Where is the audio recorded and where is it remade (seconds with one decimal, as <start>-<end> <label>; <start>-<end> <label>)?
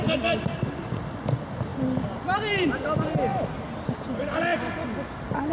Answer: 0.0-1.7 recorded; 1.7-2.8 remade; 2.8-3.3 recorded; 3.3-3.9 remade; 3.9-5.5 recorded